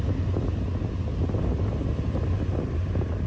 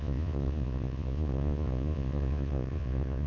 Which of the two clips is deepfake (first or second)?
second